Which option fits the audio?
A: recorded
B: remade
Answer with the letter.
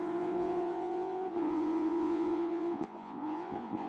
B